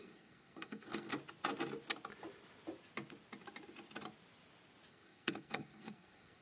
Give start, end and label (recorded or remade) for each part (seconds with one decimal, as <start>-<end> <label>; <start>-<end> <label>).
0.0-1.1 remade; 1.1-4.9 recorded; 4.9-6.4 remade